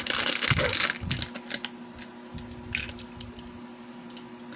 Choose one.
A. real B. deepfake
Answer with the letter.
A